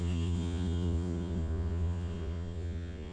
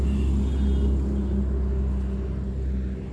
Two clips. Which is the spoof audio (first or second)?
first